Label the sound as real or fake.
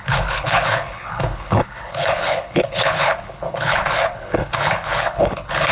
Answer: fake